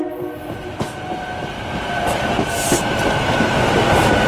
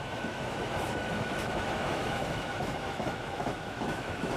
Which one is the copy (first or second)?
second